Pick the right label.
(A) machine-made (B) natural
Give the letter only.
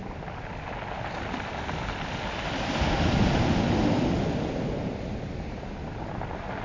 B